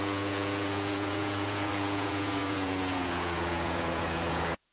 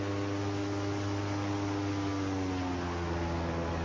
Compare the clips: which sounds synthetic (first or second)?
first